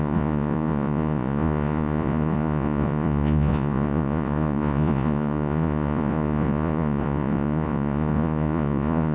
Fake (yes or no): yes